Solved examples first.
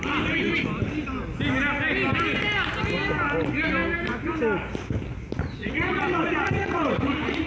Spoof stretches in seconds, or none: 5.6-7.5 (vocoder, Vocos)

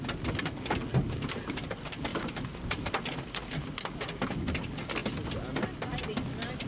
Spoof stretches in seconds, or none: 2.1-2.9 (vocoder, BigVGAN v2)